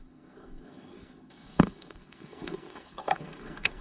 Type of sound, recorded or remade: remade